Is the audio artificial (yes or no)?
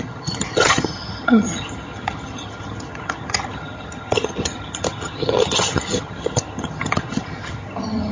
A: yes